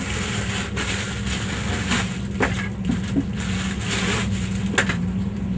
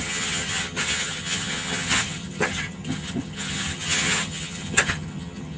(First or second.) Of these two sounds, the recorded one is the first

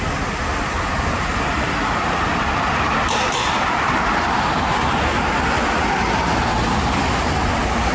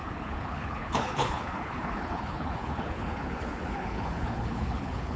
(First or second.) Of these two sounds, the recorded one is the first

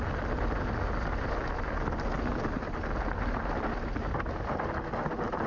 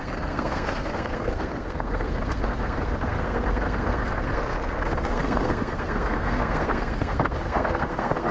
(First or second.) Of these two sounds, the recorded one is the first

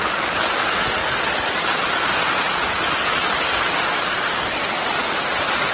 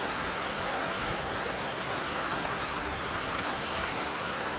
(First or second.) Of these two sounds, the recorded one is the first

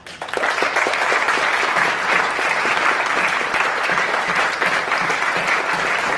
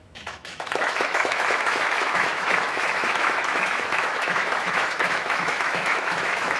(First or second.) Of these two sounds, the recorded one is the first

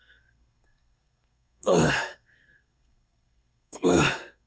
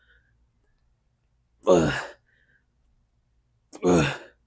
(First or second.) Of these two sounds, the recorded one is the second